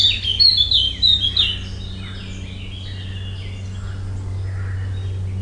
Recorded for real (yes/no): yes